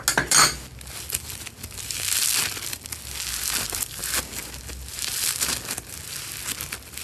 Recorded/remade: recorded